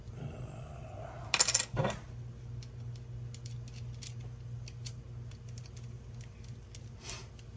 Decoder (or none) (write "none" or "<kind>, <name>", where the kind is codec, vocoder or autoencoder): none